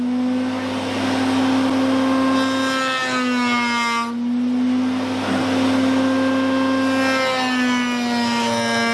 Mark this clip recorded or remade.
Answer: recorded